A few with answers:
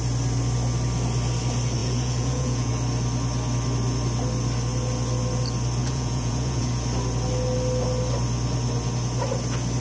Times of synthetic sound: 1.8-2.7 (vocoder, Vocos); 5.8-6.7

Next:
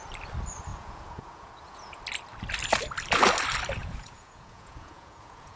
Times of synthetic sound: 0.7-2.0 (vocoder, Vocos); 3.8-5.6